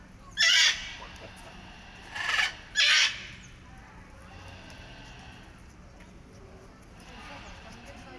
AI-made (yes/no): no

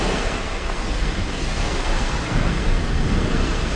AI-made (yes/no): yes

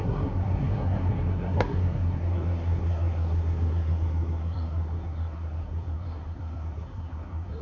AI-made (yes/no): yes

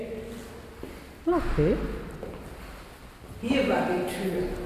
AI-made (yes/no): no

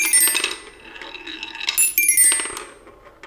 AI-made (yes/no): no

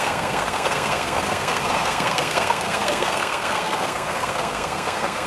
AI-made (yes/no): yes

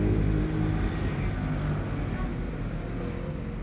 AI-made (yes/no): no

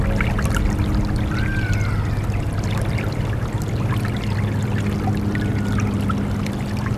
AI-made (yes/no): no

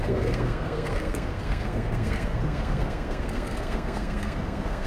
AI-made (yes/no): yes